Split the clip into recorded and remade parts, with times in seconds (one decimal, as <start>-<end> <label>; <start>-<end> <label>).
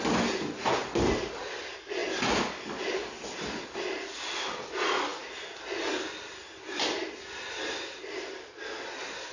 0.0-9.3 recorded